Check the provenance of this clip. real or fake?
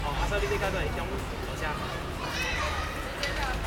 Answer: real